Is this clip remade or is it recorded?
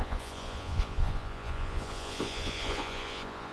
remade